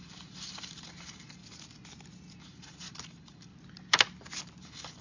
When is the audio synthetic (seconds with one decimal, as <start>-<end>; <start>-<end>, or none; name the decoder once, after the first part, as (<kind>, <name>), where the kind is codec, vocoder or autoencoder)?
0.0-1.4 (vocoder, BigVGAN v2); 2.4-3.5; 4.6-5.0